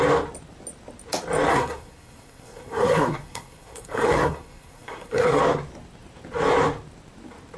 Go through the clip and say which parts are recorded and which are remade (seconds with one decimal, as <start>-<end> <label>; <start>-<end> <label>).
0.0-1.5 recorded; 1.5-5.4 remade; 5.4-7.6 recorded

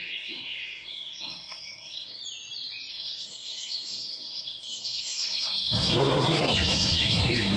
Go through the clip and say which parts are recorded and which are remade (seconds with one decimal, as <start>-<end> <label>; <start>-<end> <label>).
0.0-2.2 remade; 2.2-2.9 recorded; 2.9-7.6 remade

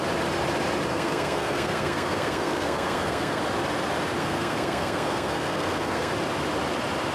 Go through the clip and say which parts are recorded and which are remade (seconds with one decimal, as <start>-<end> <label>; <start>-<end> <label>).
0.0-0.9 recorded; 0.9-3.4 remade; 3.4-4.2 recorded; 4.2-6.1 remade; 6.1-7.1 recorded

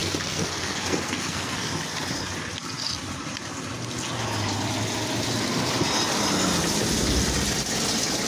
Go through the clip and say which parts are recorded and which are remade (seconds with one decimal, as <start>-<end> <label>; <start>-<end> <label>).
0.0-1.7 remade; 1.7-8.3 recorded

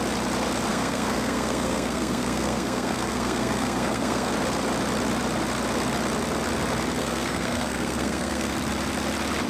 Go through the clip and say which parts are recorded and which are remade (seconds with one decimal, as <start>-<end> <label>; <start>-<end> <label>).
0.0-0.7 recorded; 0.7-4.3 remade; 4.3-7.0 recorded; 7.0-8.5 remade; 8.5-9.5 recorded

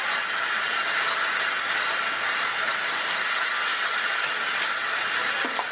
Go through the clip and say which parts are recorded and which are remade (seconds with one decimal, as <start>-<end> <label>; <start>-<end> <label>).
0.0-5.7 recorded